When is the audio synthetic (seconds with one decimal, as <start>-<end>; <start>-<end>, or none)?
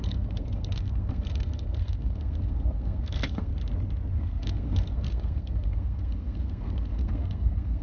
0.0-3.5; 4.1-7.8